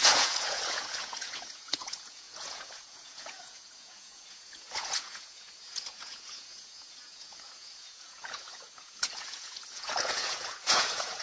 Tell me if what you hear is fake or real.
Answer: fake